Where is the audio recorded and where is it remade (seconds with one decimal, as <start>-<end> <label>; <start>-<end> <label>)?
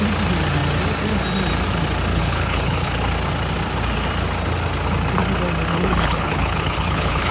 0.0-2.1 recorded; 2.1-2.9 remade; 2.9-5.7 recorded; 5.7-7.3 remade